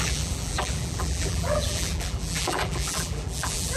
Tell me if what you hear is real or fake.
fake